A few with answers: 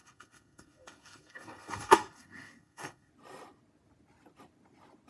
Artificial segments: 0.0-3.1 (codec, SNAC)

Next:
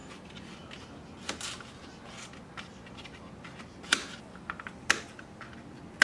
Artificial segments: none

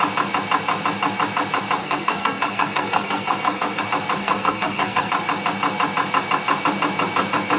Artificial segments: 1.8-3.8 (codec, SNAC); 4.2-5.1

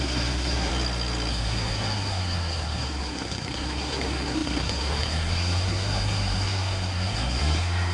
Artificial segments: 0.0-0.7 (codec, SNAC); 1.3-7.9

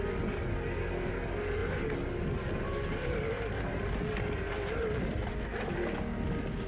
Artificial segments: none

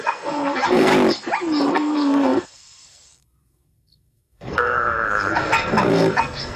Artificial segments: 0.0-0.9 (codec, SNAC); 1.7-6.6